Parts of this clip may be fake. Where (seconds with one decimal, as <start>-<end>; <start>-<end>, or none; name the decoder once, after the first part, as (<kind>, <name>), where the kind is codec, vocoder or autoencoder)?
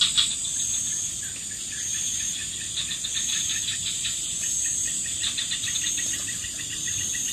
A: none